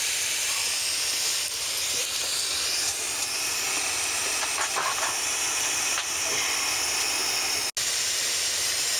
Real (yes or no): yes